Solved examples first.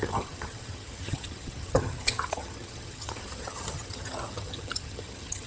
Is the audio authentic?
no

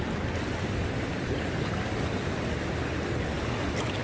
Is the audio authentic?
yes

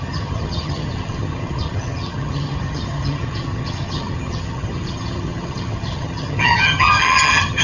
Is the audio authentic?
no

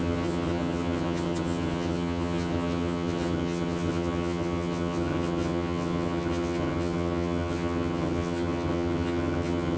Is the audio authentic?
no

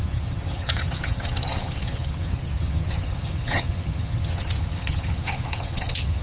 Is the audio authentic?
no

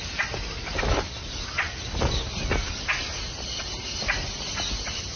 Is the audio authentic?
yes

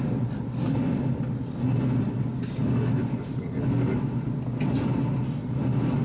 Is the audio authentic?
yes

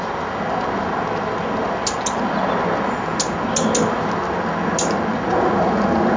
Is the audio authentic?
yes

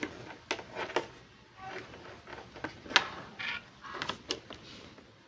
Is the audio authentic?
yes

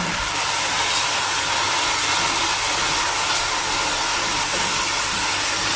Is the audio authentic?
yes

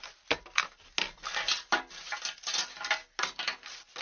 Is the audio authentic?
yes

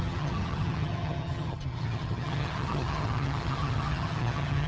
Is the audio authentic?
no